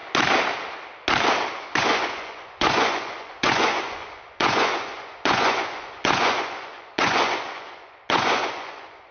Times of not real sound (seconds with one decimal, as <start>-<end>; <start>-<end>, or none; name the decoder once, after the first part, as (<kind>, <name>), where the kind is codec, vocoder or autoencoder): 1.5-9.1 (vocoder, Vocos)